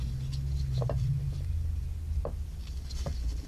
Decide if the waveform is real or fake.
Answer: real